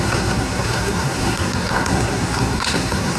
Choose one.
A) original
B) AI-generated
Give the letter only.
B